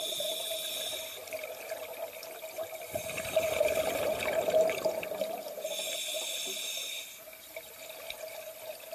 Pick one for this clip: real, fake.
real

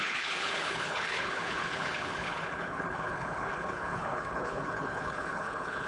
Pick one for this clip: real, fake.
fake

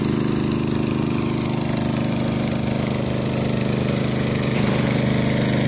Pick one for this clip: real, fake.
real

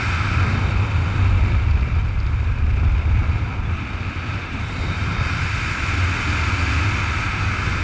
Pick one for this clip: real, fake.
real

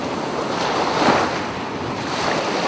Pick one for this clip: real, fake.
fake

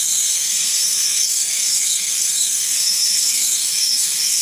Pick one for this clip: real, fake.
fake